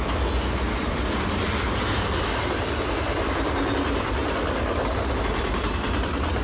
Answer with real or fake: real